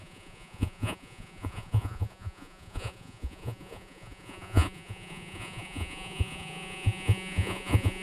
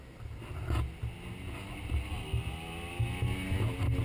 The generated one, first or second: first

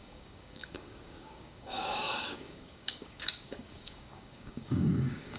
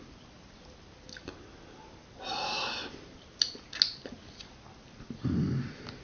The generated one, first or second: first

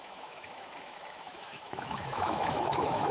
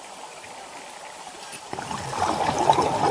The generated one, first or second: first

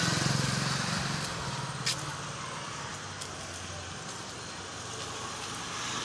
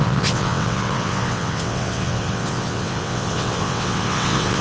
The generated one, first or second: second